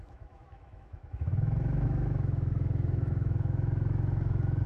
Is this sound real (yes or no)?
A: no